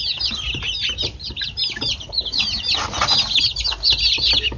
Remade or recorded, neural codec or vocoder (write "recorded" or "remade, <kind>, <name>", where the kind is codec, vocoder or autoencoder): recorded